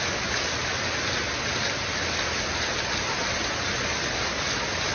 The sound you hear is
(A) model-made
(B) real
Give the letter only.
B